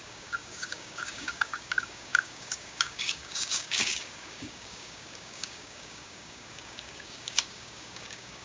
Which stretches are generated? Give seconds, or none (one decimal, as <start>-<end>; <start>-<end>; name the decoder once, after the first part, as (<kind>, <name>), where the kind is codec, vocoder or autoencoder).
0.0-8.4 (codec, DAC)

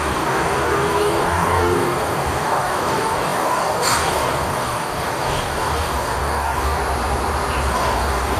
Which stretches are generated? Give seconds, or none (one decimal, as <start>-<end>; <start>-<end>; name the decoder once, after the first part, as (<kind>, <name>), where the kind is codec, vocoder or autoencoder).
0.0-6.8 (codec, DAC); 7.7-8.4

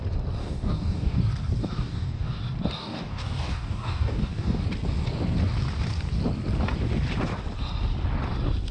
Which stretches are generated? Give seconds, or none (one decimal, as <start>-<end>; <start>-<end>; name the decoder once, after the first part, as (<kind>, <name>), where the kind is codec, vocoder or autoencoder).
0.4-1.2 (codec, DAC); 1.6-2.4; 2.8-4.6

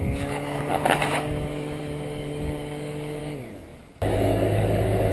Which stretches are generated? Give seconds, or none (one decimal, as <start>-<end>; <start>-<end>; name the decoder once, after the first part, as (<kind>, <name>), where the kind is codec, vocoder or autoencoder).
0.0-5.1 (codec, DAC)

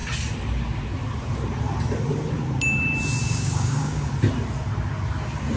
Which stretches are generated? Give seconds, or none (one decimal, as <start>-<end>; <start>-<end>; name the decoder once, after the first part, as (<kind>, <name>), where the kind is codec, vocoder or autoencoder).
3.2-4.1 (codec, DAC)

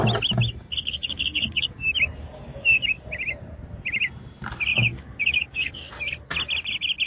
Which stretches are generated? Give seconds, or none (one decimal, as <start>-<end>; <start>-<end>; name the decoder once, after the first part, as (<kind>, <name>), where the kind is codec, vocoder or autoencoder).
0.8-1.7 (codec, DAC); 2.2-2.9; 4.7-5.9